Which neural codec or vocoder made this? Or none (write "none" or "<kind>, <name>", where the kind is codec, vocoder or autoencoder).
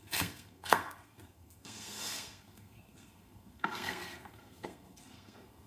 codec, SNAC